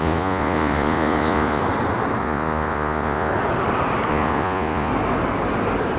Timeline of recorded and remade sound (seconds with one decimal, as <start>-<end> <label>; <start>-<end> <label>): 0.0-1.6 remade; 1.6-2.2 recorded; 2.2-3.3 remade; 3.3-4.1 recorded; 4.1-4.9 remade; 4.9-6.0 recorded